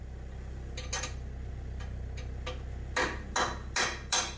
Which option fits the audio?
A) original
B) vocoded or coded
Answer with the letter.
A